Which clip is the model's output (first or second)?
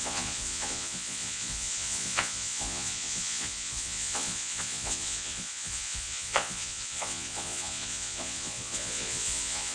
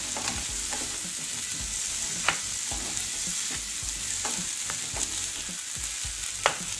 first